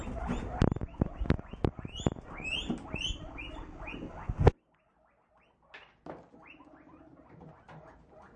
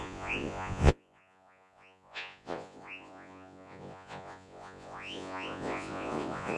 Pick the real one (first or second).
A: first